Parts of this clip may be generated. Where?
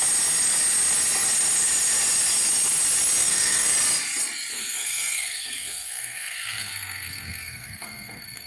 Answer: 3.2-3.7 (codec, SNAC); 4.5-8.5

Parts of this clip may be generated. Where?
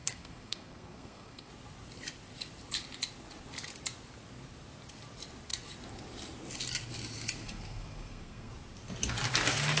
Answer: 0.0-1.5 (codec, SNAC); 7.4-8.5